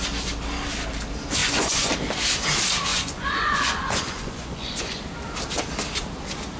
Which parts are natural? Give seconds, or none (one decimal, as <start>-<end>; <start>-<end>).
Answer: 0.0-1.4; 1.9-2.9; 5.0-6.6

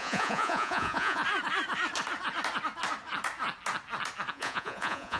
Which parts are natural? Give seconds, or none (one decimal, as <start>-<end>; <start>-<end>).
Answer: 1.2-4.3